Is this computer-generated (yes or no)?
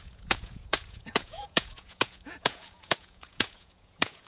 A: yes